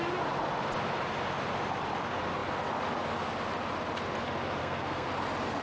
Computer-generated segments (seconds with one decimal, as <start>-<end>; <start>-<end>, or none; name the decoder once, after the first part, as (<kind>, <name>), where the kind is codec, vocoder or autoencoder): 4.6-5.1 (codec, SNAC)